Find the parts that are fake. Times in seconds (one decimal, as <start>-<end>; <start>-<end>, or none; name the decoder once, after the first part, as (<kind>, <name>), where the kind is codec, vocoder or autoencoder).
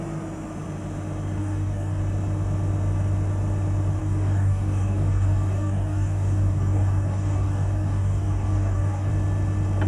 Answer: 1.4-2.0 (codec, DAC); 4.0-9.1